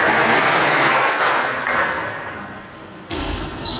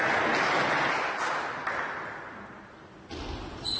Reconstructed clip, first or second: first